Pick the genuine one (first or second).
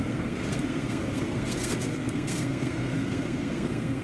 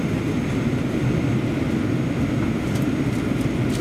second